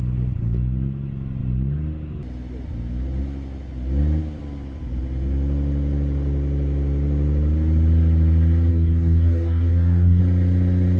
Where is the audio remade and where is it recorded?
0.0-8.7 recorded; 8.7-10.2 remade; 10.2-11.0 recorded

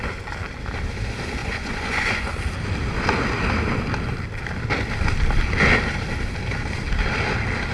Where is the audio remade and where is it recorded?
0.0-1.4 recorded; 1.4-2.3 remade; 2.3-7.7 recorded

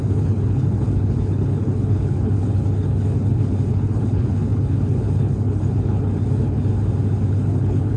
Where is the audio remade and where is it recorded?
0.0-6.7 remade; 6.7-7.3 recorded; 7.3-8.0 remade

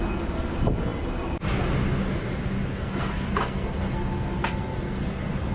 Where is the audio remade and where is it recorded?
0.0-2.7 recorded; 2.7-5.5 remade

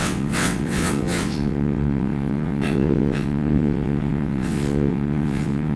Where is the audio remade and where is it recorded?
0.0-5.8 remade

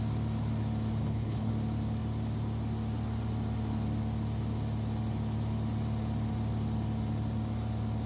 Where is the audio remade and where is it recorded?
0.0-1.0 recorded; 1.0-1.5 remade; 1.5-8.1 recorded

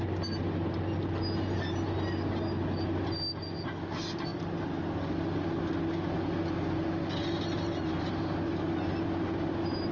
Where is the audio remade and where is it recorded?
0.0-9.9 recorded

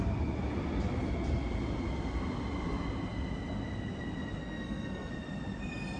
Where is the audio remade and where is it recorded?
0.0-4.4 recorded; 4.4-5.1 remade; 5.1-6.0 recorded